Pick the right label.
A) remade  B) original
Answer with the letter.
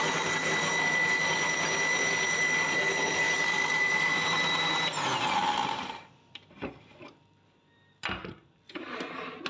B